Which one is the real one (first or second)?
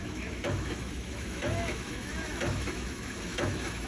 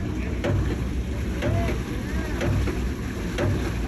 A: second